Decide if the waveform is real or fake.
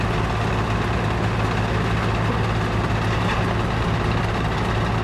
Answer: real